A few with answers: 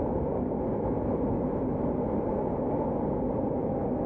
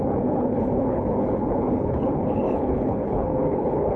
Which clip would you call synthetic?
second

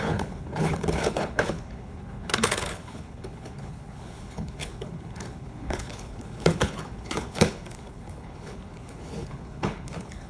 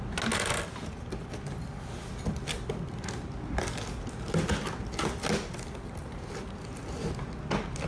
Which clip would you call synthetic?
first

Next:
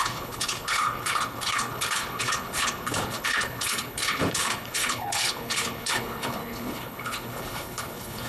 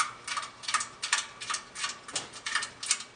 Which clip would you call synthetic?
first